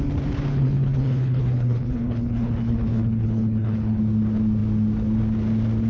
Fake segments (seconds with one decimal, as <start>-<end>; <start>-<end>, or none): 0.5-4.0